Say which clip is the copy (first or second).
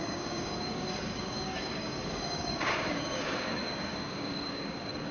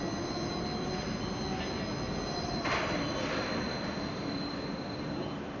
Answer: first